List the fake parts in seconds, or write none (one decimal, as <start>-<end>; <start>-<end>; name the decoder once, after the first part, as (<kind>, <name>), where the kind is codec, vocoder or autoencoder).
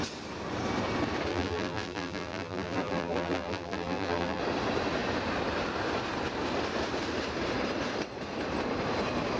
1.3-4.4 (vocoder, BigVGAN v2)